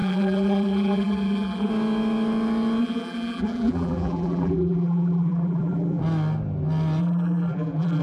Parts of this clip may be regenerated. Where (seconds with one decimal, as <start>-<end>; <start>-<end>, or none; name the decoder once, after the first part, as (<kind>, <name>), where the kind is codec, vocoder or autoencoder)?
0.0-1.7 (vocoder, BigVGAN v2); 2.8-6.0; 7.0-8.0